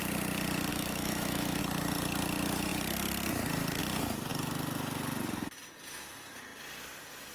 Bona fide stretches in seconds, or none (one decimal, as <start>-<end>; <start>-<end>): 0.0-0.7; 1.6-7.3